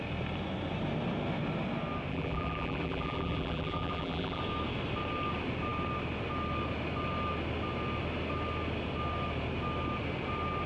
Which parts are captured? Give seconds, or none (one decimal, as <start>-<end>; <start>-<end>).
0.0-2.1; 4.4-10.7

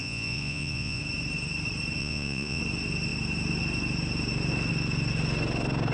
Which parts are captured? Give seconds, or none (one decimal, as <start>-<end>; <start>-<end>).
1.0-2.0; 2.6-5.9

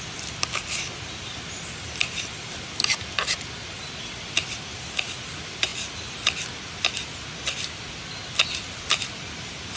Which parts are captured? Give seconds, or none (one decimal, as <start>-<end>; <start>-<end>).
0.0-9.8

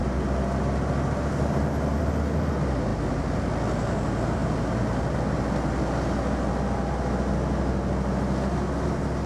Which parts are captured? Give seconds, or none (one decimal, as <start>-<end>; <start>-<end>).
0.0-9.3

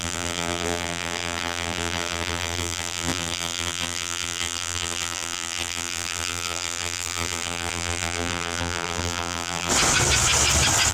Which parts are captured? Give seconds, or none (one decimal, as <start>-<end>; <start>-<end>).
9.7-10.9